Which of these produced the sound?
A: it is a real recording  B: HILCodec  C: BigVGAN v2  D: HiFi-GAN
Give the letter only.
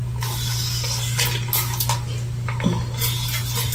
A